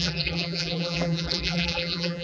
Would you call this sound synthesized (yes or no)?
yes